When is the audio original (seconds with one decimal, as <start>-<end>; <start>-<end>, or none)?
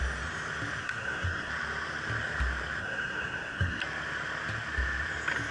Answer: 0.0-0.8; 1.5-2.8; 3.8-5.5